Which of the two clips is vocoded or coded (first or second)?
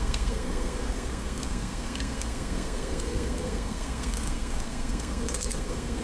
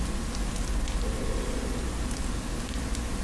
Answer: first